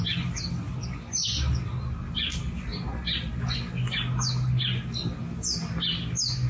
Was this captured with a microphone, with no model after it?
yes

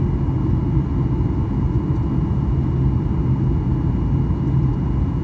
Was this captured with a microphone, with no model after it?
yes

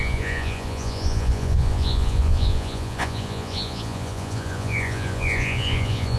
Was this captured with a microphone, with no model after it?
no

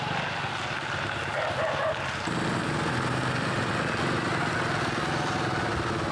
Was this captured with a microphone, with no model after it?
yes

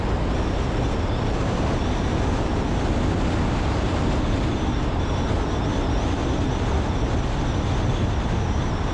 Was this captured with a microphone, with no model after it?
yes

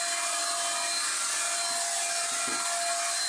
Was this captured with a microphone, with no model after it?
yes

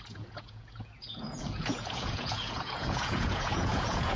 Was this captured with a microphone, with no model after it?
no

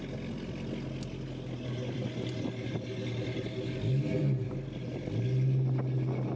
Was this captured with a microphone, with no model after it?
yes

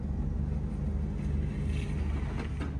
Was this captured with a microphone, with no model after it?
yes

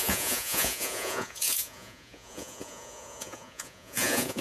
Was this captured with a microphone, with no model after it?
no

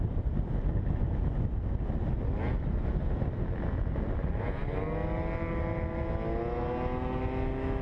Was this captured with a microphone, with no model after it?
yes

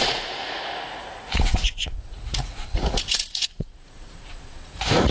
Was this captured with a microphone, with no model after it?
no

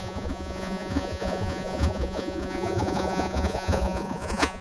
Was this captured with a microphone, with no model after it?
no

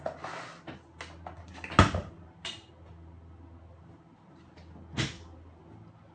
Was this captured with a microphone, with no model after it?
yes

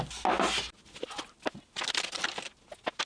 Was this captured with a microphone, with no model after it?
yes